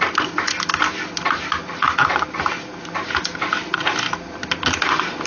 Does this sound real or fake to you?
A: real